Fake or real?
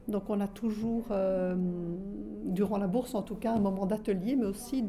real